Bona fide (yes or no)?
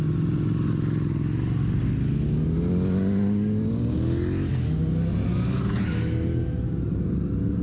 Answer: yes